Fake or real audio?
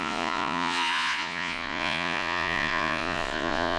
fake